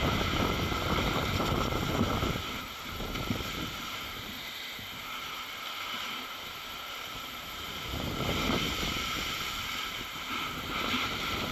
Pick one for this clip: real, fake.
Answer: fake